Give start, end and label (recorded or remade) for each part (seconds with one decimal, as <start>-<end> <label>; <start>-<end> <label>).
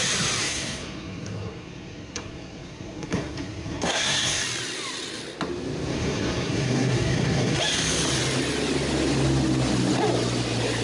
0.0-0.4 recorded; 0.4-4.4 remade; 4.4-5.9 recorded; 5.9-7.6 remade; 7.6-10.8 recorded